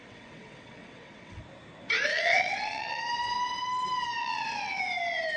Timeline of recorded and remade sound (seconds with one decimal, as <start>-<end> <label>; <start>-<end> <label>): 0.0-1.4 remade; 1.4-2.1 recorded; 2.1-3.0 remade; 3.0-4.2 recorded; 4.2-4.8 remade; 4.8-5.4 recorded